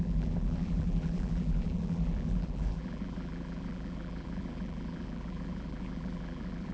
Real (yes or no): no